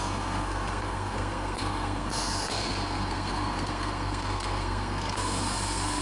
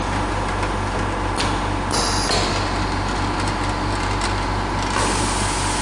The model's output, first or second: first